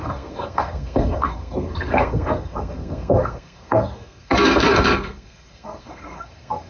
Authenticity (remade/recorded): remade